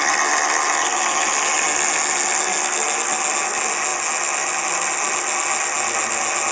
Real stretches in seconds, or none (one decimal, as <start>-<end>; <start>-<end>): 0.0-6.5